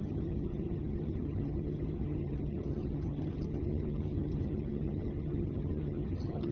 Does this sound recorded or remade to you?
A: remade